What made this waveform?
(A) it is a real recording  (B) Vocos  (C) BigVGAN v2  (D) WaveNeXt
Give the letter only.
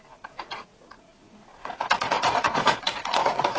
B